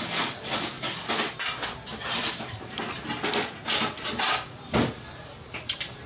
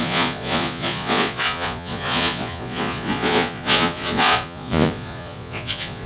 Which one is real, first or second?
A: first